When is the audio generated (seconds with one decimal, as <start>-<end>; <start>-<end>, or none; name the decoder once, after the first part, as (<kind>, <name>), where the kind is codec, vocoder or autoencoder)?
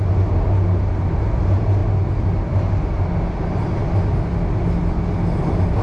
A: none